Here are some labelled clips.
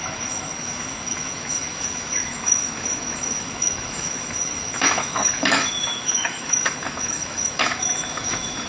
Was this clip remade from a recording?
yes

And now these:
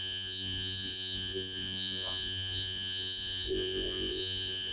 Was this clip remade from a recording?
yes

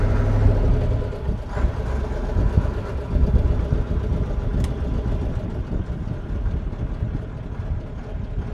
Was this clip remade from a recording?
no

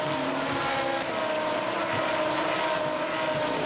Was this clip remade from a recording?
no